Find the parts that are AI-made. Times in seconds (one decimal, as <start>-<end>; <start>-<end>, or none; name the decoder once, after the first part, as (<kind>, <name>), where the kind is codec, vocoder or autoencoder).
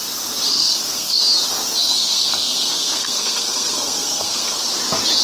0.5-1.2 (codec, SNAC); 1.8-4.6